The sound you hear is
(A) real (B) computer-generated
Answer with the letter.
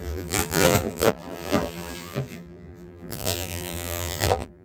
B